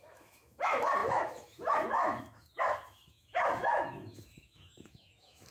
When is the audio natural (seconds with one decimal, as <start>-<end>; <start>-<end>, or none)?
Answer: none